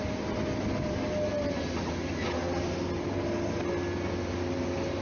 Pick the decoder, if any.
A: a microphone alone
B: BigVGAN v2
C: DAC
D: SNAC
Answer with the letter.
A